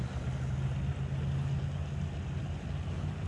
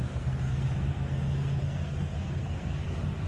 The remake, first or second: second